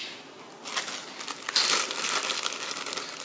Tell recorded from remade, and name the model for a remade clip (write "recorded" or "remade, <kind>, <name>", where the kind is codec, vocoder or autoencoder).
recorded